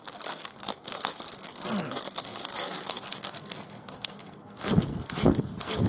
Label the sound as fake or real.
fake